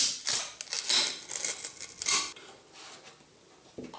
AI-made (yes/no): no